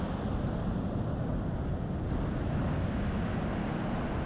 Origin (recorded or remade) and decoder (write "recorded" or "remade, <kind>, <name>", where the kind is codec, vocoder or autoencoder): recorded